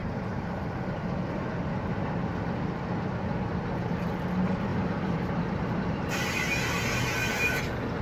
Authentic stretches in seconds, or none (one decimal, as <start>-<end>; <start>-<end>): 0.0-4.7; 5.3-8.0